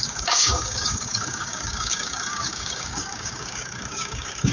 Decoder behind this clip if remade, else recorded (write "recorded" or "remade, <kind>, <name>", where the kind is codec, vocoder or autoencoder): remade, codec, DAC